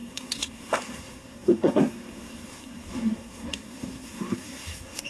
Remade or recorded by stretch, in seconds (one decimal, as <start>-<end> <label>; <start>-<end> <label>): 0.0-5.1 remade